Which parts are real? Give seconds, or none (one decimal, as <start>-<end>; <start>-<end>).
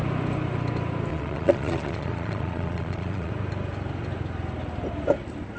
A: 0.0-1.1; 3.3-5.6